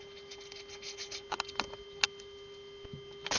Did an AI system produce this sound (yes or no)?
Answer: no